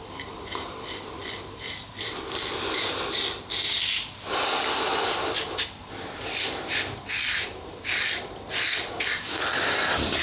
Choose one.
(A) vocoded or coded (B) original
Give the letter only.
A